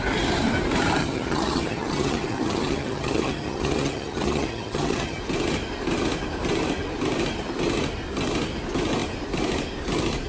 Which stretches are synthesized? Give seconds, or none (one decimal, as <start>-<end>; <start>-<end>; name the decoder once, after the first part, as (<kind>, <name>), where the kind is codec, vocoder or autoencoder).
1.0-5.2 (vocoder, HiFi-GAN)